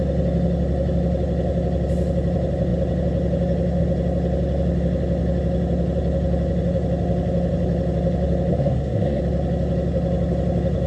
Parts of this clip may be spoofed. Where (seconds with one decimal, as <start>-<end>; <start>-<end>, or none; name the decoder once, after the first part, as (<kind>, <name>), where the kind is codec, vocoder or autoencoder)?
8.5-9.2 (codec, SNAC)